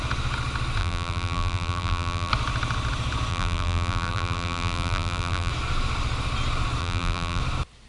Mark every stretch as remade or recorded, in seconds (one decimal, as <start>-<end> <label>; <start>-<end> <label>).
0.0-0.8 recorded; 0.8-2.3 remade; 2.3-3.3 recorded; 3.3-5.5 remade; 5.5-6.8 recorded; 6.8-7.4 remade; 7.4-7.9 recorded